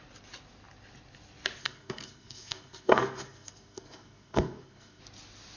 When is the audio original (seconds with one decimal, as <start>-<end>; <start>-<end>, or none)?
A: 0.0-1.6; 5.0-5.6